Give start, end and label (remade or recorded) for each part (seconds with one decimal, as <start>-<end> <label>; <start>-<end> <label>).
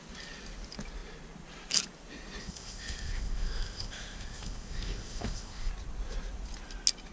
0.0-2.4 recorded; 2.4-5.7 remade; 5.7-7.1 recorded